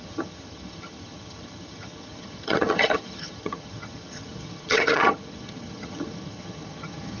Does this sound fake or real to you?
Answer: fake